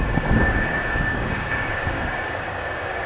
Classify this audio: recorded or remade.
remade